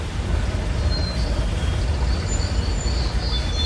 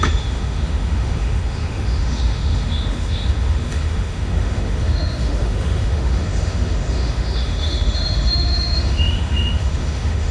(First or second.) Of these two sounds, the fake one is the second